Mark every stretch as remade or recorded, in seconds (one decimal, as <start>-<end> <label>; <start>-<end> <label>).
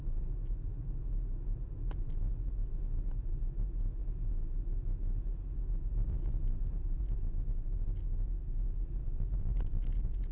0.0-5.9 recorded; 5.9-7.0 remade; 7.0-9.0 recorded; 9.0-10.3 remade